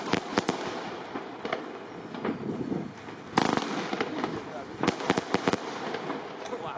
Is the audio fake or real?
real